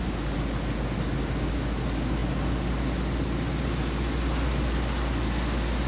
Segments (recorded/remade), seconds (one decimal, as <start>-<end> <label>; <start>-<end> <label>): 0.0-5.9 recorded